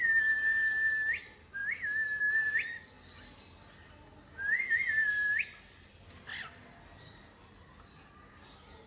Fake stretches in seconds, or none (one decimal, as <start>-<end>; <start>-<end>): 1.6-2.2